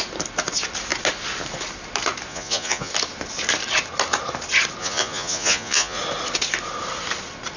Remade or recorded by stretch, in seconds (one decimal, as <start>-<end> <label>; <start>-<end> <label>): 0.0-2.3 recorded; 2.3-2.9 remade; 2.9-4.8 recorded; 4.8-6.0 remade; 6.0-7.6 recorded